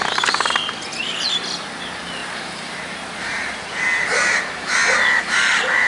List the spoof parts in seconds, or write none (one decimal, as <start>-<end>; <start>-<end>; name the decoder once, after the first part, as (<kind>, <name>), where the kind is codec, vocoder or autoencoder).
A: 2.2-5.9 (vocoder, BigVGAN v2)